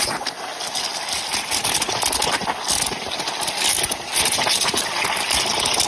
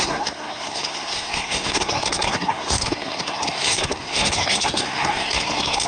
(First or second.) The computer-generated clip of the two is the second